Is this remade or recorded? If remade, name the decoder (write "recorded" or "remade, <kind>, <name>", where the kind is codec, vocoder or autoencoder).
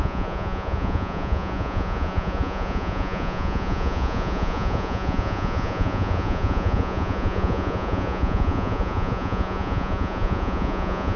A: remade, vocoder, Vocos